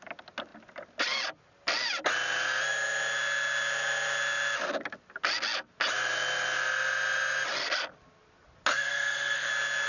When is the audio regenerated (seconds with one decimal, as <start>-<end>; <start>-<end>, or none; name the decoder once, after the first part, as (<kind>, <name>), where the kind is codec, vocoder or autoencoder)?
8.7-9.5 (codec, SNAC)